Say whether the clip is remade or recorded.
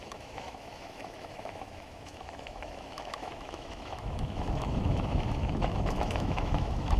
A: remade